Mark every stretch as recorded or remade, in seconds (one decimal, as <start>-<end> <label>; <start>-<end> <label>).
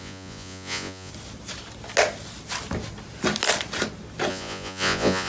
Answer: 0.0-1.1 remade; 1.1-4.3 recorded; 4.3-5.3 remade